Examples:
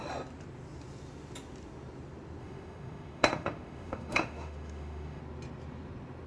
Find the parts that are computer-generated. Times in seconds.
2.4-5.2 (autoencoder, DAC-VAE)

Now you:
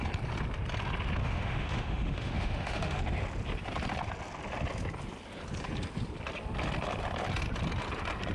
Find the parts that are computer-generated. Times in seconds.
1.2-3.0 (autoencoder, DAC-VAE)

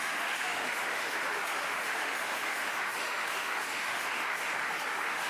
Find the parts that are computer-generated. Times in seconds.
0.0-5.3 (autoencoder, DAC-VAE)

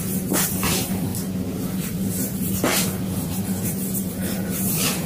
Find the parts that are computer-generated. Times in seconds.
none

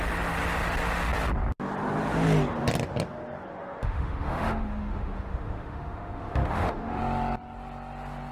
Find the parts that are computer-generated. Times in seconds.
3.6-7.0 (autoencoder, DAC-VAE)

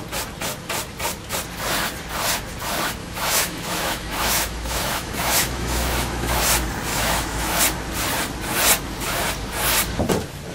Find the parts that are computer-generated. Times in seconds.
3.0-6.4 (autoencoder, DAC-VAE); 6.9-7.6

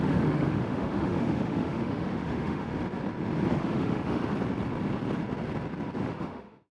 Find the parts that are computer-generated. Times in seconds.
0.0-2.7 (autoencoder, DAC-VAE); 3.5-4.3; 6.0-6.8

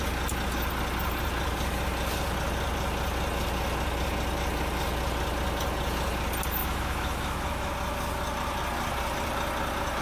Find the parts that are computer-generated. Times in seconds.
6.6-7.7 (autoencoder, DAC-VAE)